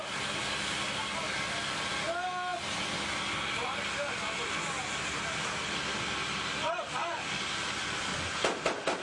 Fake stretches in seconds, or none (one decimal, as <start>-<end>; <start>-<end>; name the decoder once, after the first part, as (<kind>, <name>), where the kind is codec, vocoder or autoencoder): none